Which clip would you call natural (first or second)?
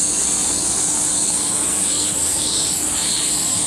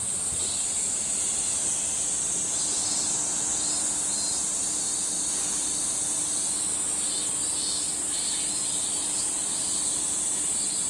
second